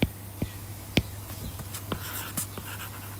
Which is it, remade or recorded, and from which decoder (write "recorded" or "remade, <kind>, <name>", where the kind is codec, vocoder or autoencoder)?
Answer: recorded